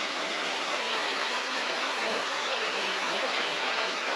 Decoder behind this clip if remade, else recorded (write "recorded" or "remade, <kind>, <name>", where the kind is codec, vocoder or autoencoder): remade, codec, SNAC